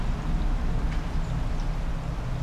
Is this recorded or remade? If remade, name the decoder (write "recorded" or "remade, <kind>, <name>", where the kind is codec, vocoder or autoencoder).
recorded